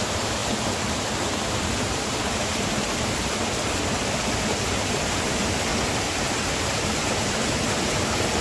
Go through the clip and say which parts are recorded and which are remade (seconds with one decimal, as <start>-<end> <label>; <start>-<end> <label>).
0.0-0.4 remade; 0.4-0.9 recorded; 0.9-3.2 remade; 3.2-5.2 recorded; 5.2-5.7 remade; 5.7-6.4 recorded; 6.4-8.4 remade